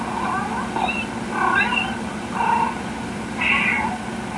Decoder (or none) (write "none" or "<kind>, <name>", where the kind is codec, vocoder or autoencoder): none